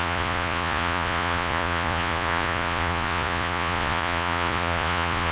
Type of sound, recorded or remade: remade